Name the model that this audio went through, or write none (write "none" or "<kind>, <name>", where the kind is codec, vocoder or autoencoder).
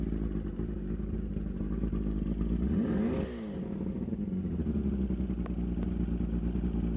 none